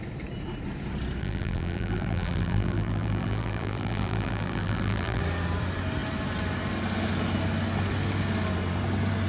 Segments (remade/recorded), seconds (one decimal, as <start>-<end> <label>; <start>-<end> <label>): 0.0-1.2 recorded; 1.2-5.2 remade; 5.2-9.3 recorded